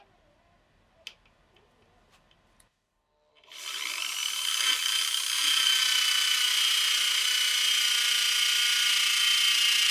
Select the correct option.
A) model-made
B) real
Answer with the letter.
B